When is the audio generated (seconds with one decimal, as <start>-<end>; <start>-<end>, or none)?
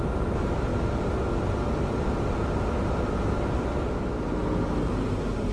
none